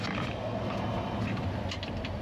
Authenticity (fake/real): real